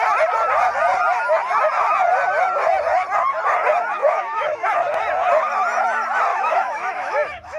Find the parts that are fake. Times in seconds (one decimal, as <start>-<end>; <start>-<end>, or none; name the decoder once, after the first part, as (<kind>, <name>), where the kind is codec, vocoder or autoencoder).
4.0-4.7 (autoencoder, DAC-VAE); 6.3-7.6